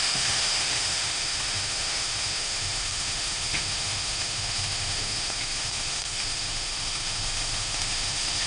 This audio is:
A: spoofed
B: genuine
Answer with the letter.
A